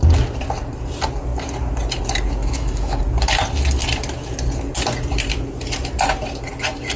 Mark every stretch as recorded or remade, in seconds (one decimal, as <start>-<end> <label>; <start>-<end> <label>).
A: 0.0-2.4 recorded; 2.4-3.0 remade; 3.0-7.0 recorded